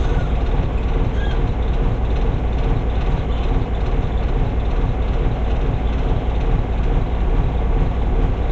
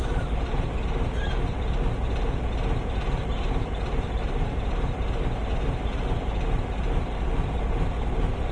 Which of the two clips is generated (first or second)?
second